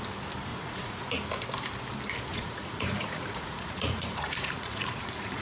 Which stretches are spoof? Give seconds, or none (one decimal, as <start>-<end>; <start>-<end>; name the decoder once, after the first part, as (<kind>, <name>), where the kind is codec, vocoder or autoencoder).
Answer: 0.5-1.2 (vocoder, Vocos); 2.3-5.4